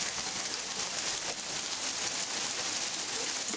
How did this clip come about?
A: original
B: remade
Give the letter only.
A